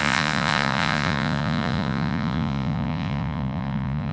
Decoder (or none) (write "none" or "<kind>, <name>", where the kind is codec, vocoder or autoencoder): vocoder, Vocos